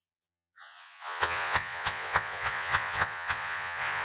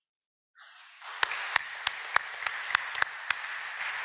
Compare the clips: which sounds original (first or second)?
second